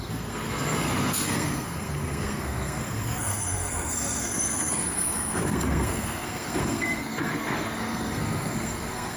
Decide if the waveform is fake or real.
fake